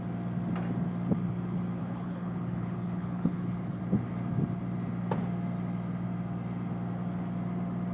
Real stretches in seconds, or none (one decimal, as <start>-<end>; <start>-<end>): 0.0-1.8; 3.8-7.9